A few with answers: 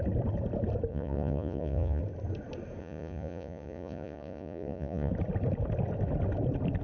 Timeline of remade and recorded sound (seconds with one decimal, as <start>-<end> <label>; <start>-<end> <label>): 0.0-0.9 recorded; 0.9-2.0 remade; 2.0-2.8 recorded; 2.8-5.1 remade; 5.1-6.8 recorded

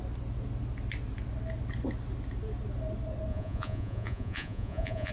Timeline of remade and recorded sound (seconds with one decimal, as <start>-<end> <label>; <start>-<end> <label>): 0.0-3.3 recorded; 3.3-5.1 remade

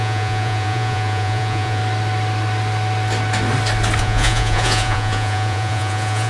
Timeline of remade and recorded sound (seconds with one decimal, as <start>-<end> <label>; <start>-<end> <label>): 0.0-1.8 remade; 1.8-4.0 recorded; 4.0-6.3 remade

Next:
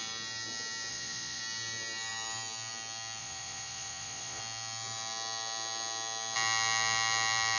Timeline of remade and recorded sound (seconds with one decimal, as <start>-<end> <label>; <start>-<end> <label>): 0.0-0.9 recorded; 0.9-1.4 remade; 1.4-3.2 recorded; 3.2-4.4 remade; 4.4-7.6 recorded

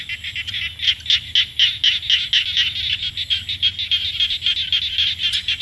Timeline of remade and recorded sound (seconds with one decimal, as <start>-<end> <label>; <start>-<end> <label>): 0.0-5.6 recorded

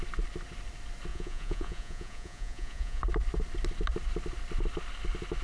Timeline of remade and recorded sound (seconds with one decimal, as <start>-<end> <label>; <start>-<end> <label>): 0.0-1.1 recorded; 1.1-3.0 remade; 3.0-5.4 recorded